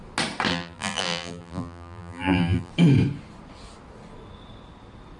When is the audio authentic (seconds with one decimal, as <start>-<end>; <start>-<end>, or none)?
0.0-0.5; 2.7-5.2